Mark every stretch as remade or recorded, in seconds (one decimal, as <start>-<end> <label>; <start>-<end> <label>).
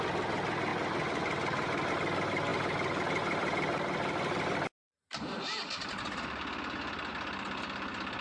0.0-8.2 recorded